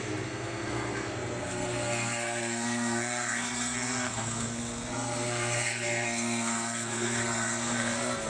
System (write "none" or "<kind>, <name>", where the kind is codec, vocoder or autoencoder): codec, SNAC